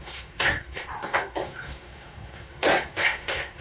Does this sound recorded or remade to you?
remade